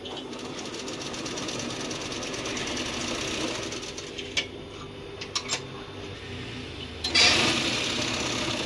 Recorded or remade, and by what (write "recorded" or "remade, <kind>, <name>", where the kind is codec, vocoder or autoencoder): recorded